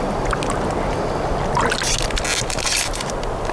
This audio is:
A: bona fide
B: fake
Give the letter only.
A